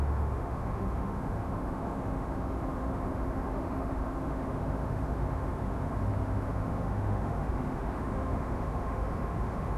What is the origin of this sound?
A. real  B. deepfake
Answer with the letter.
B